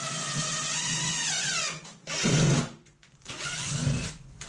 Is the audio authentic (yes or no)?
no